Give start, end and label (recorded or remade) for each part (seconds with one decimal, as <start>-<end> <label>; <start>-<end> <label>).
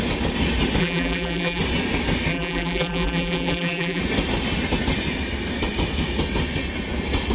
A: 0.0-0.8 recorded; 0.8-1.6 remade; 1.6-2.3 recorded; 2.3-4.0 remade; 4.0-7.3 recorded